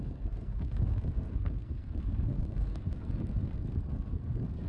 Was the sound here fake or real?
fake